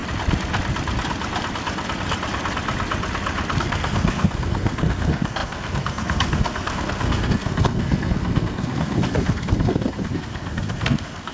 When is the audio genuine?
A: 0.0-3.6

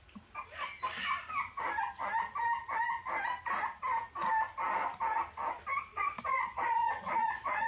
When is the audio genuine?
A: 0.0-5.9

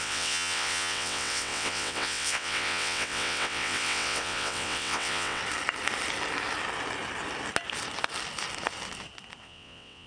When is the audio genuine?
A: 5.4-9.4